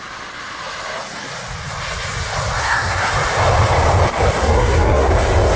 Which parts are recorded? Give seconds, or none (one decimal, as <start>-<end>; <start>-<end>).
0.0-2.6; 3.1-4.4; 5.1-5.6